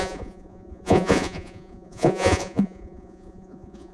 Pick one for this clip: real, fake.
fake